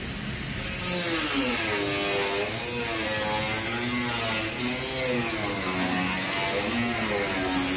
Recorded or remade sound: recorded